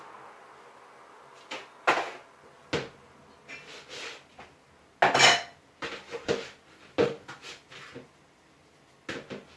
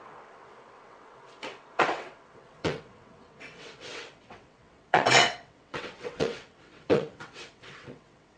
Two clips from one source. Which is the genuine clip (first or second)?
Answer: first